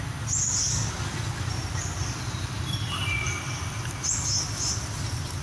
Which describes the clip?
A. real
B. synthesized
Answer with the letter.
A